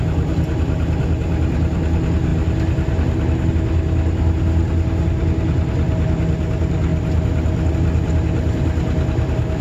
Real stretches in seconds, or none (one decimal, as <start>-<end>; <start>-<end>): 0.0-9.6